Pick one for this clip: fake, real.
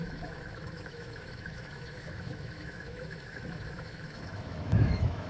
fake